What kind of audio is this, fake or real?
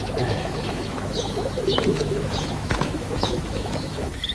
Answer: fake